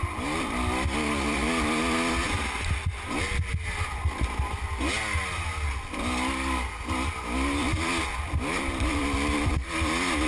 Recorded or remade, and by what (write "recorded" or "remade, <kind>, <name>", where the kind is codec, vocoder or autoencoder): recorded